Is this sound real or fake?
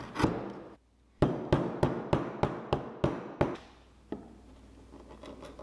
real